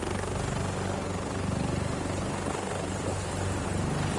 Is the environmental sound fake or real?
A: real